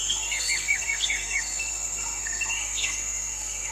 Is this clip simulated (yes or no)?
yes